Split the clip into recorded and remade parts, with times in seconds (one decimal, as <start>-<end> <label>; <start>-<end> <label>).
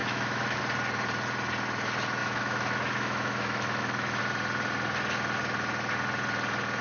0.0-0.6 remade; 0.6-2.2 recorded; 2.2-4.2 remade; 4.2-6.8 recorded